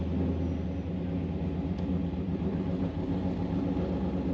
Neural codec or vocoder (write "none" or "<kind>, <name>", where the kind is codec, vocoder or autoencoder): none